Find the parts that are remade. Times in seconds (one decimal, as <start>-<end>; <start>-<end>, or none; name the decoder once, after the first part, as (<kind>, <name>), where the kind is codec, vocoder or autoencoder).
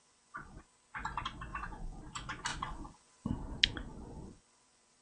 0.0-0.6 (vocoder, Vocos); 1.5-2.0; 2.5-3.3; 3.9-5.0